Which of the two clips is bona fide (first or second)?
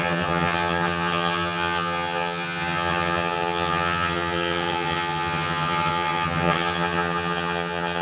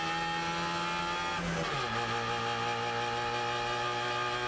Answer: second